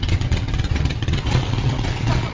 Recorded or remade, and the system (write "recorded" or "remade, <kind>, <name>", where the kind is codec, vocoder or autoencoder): remade, vocoder, WaveNeXt